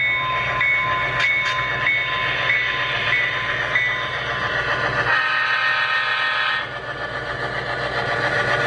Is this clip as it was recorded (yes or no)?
yes